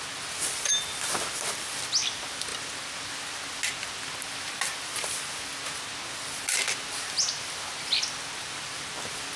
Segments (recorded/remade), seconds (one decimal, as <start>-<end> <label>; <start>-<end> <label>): 0.0-9.4 recorded